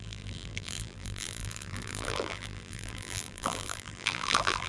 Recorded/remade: remade